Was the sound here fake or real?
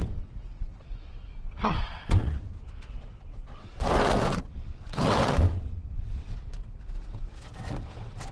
fake